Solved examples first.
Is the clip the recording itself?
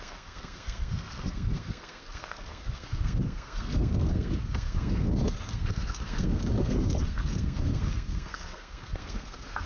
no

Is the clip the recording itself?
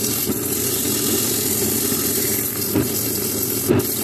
yes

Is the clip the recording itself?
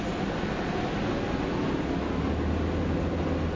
yes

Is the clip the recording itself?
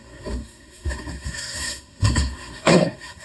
no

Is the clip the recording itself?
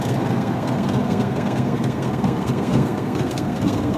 no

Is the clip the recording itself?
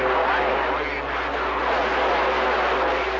yes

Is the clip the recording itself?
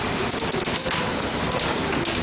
yes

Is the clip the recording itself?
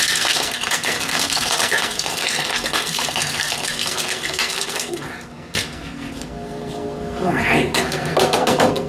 no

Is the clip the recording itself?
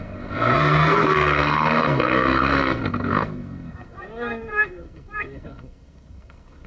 no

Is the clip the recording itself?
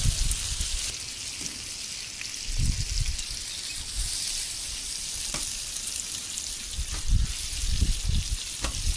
yes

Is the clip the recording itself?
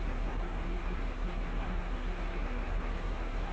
no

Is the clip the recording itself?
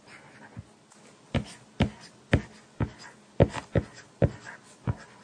yes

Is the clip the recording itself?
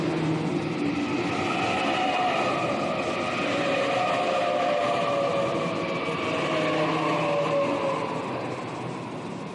yes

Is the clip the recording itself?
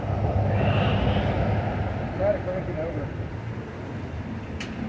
yes